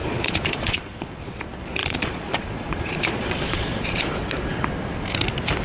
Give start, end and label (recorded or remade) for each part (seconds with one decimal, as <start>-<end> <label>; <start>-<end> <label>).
0.0-1.4 remade; 1.4-1.8 recorded; 1.8-4.0 remade; 4.0-5.6 recorded